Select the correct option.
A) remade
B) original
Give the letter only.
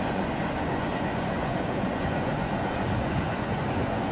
A